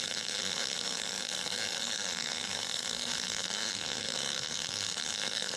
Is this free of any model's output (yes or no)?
no